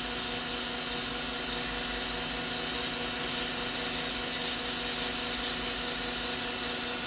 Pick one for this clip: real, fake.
real